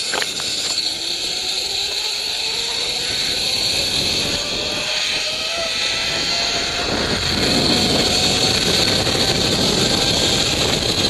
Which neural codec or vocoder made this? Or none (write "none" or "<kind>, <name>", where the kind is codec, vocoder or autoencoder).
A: none